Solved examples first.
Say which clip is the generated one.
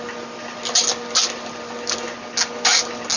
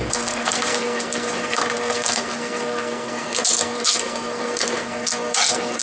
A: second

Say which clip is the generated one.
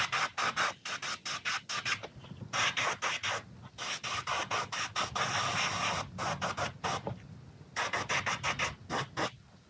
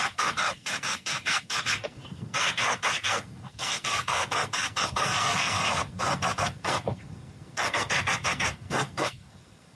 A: second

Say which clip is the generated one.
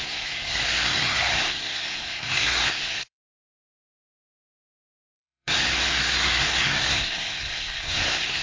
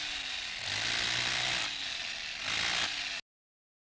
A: first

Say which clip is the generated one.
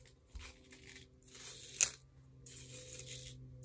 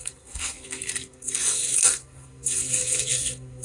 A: second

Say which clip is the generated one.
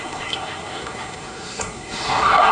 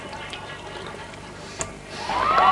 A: first